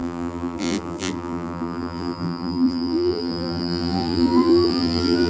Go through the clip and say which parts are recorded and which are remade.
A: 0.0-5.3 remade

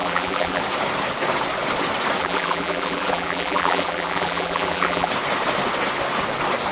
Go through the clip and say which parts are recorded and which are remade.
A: 0.0-0.6 remade; 0.6-2.2 recorded; 2.2-5.1 remade; 5.1-6.7 recorded